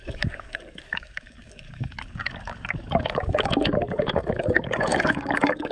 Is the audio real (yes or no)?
no